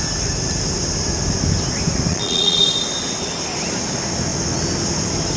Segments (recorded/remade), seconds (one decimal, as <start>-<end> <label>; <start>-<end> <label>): 0.0-2.1 recorded; 2.1-2.6 remade; 2.6-5.4 recorded